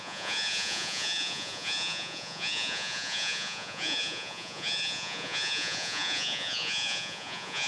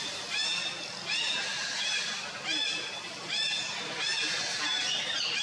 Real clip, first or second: second